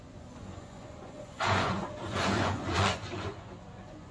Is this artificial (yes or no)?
yes